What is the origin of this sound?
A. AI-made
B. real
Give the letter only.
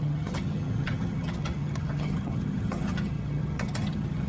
A